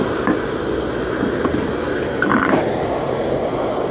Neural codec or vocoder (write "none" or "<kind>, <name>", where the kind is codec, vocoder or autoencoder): none